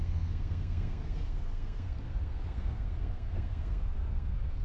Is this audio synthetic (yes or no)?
yes